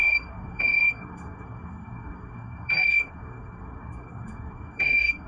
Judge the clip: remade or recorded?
remade